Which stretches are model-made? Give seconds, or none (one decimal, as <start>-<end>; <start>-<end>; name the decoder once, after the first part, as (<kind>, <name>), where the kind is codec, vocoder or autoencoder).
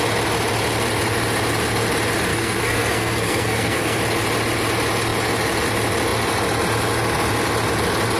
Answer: 2.3-4.0 (codec, SNAC)